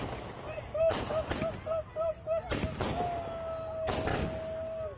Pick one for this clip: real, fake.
real